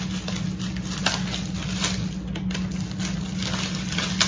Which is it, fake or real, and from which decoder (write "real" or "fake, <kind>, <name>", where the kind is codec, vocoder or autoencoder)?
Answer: real